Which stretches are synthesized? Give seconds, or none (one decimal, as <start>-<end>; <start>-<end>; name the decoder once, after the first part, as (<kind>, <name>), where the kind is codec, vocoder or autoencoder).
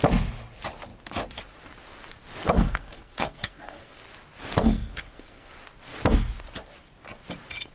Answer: 2.4-4.0 (codec, SNAC); 4.6-5.5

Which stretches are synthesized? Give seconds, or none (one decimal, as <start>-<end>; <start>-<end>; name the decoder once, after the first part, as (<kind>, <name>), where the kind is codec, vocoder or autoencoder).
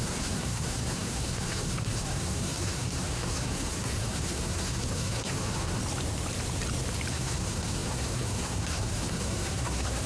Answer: 0.0-5.8 (codec, SNAC); 7.1-10.1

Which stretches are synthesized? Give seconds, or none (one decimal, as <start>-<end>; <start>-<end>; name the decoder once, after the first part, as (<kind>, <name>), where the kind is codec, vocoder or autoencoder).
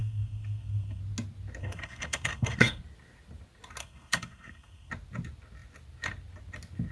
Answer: 0.0-1.0 (codec, SNAC); 1.6-2.8; 3.8-4.9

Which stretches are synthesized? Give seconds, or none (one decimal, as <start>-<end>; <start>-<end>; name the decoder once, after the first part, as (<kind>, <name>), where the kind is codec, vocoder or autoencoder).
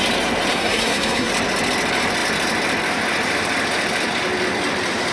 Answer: 0.5-1.3 (codec, SNAC)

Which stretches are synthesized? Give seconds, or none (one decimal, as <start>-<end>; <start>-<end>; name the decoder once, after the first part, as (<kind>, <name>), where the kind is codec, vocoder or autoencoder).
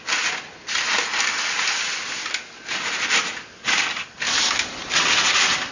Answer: none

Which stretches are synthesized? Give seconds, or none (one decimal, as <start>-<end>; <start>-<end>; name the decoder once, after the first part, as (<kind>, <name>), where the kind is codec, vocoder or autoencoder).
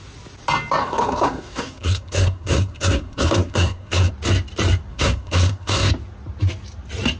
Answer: 0.8-4.1 (codec, SNAC); 4.9-5.9